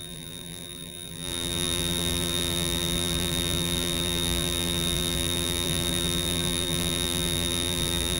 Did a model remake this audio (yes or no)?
yes